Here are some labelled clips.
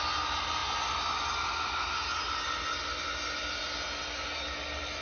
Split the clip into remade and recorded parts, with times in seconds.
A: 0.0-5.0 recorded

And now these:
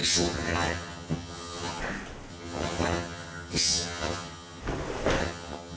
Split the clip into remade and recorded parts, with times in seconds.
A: 0.0-1.8 remade; 1.8-2.3 recorded; 2.3-4.6 remade; 4.6-5.2 recorded; 5.2-5.8 remade